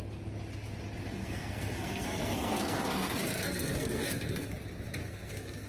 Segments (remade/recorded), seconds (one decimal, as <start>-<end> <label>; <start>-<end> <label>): 0.0-1.1 recorded; 1.1-4.5 remade; 4.5-5.0 recorded; 5.0-5.7 remade